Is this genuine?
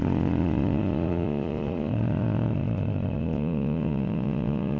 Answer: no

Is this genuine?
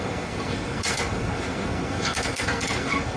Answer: no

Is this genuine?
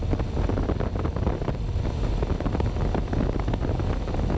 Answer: yes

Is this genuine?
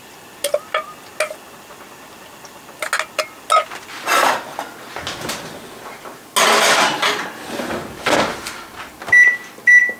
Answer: yes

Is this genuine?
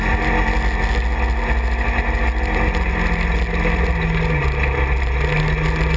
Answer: yes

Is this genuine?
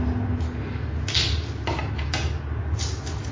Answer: yes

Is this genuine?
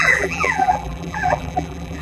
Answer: no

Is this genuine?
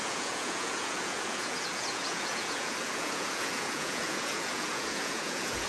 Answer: no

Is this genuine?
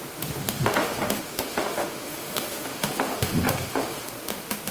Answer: no